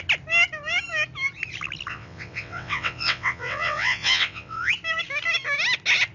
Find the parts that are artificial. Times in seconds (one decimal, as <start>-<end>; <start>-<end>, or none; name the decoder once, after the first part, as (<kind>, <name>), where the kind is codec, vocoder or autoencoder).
1.9-4.7 (vocoder, WaveNeXt)